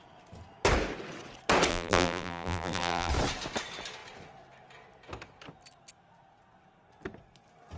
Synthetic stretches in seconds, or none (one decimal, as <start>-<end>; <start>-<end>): 1.7-3.1